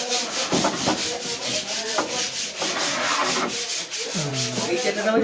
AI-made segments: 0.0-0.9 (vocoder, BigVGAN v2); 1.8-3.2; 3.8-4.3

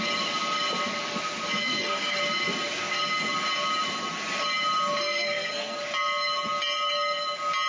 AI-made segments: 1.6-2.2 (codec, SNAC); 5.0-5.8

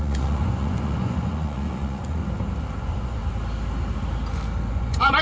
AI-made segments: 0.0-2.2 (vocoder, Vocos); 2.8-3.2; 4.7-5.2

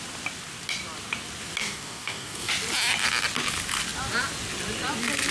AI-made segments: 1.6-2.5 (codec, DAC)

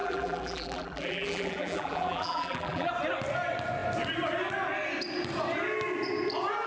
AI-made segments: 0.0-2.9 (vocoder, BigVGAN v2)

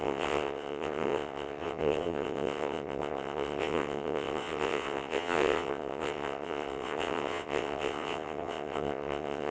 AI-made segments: 0.0-9.5 (vocoder, WaveNeXt)